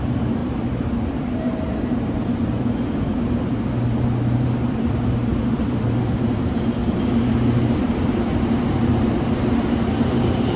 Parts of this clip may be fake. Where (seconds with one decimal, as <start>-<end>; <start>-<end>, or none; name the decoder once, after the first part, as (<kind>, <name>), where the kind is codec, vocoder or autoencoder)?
0.0-6.8 (vocoder, BigVGAN v2); 7.7-10.6